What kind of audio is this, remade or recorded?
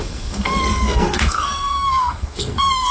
remade